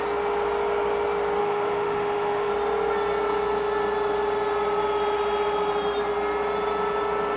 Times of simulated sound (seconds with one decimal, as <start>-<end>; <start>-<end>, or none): 1.4-2.5